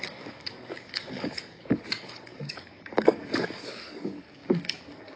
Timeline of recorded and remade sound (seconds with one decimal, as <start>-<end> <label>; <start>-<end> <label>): 0.0-5.2 remade